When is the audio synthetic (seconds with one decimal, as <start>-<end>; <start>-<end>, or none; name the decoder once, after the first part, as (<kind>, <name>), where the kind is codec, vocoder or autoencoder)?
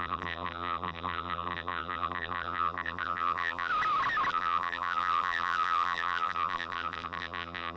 0.0-3.7 (vocoder, BigVGAN v2); 4.3-7.8